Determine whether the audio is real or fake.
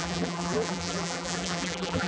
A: fake